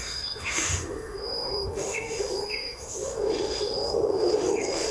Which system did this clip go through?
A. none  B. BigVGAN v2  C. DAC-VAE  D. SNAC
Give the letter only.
C